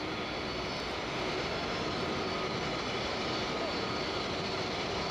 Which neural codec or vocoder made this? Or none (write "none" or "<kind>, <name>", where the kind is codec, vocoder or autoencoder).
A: none